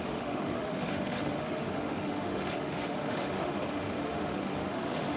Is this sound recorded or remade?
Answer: remade